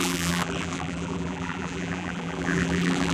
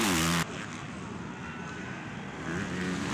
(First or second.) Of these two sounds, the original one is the second